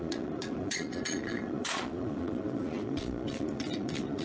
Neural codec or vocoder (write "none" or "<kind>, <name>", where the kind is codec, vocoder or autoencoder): vocoder, Vocos